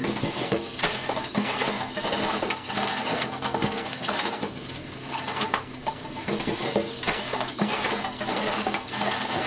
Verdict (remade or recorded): remade